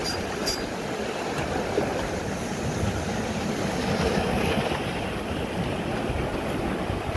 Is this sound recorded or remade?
recorded